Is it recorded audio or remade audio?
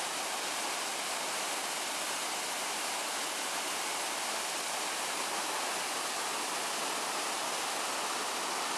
recorded